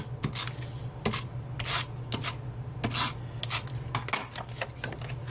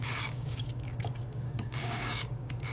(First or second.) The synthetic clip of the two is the second